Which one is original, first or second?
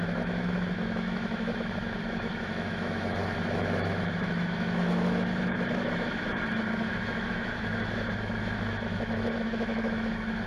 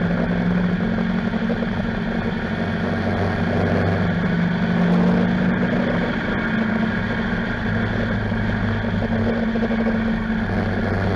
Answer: second